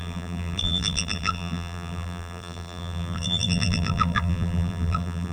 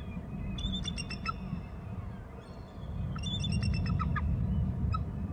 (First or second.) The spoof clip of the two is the first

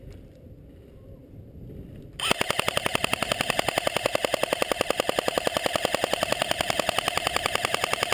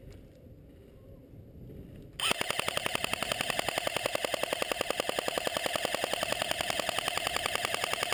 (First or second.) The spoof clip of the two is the first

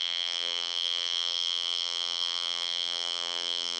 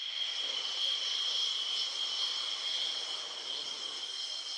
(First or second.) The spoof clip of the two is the first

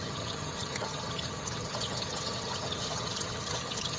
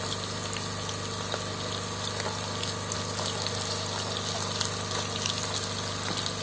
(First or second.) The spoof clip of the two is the first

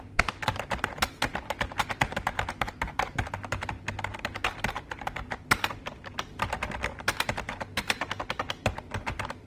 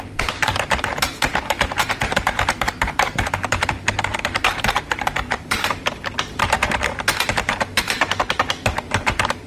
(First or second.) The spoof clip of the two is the second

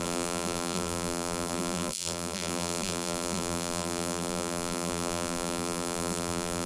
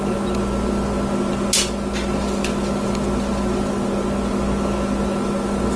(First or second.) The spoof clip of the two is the first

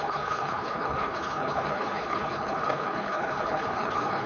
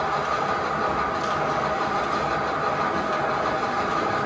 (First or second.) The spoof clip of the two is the first